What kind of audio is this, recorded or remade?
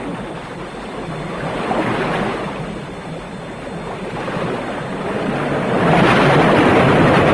recorded